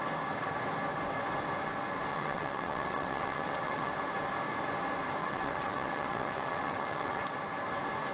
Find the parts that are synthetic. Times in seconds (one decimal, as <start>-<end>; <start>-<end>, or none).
2.1-3.9; 5.2-7.4